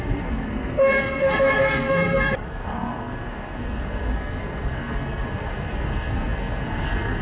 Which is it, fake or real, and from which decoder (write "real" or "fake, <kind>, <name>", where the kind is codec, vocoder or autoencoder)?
fake, codec, SNAC